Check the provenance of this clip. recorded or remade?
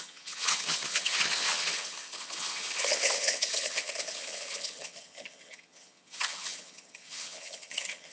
remade